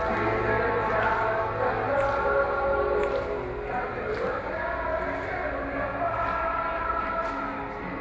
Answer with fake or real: real